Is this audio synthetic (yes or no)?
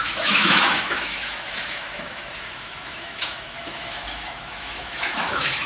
yes